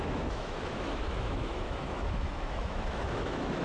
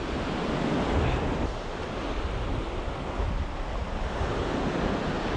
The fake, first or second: first